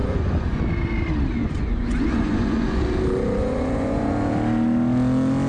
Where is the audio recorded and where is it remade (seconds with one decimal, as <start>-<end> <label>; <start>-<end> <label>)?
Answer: 0.0-0.6 remade; 0.6-1.4 recorded; 1.4-2.8 remade; 2.8-3.4 recorded; 3.4-4.3 remade; 4.3-5.5 recorded